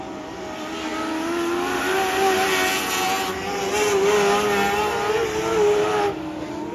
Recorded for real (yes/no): yes